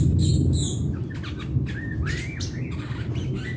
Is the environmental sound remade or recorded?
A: recorded